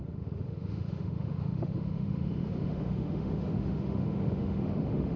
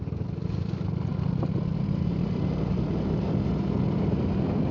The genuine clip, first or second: second